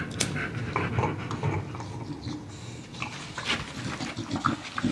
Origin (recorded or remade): recorded